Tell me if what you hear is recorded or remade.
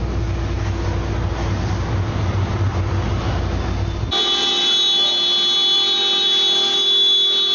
recorded